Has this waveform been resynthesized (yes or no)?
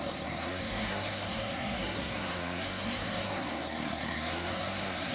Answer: yes